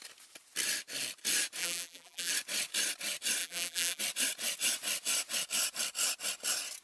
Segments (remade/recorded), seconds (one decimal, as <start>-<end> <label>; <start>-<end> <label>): 0.0-1.6 recorded; 1.6-2.3 remade; 2.3-3.4 recorded; 3.4-4.0 remade; 4.0-6.8 recorded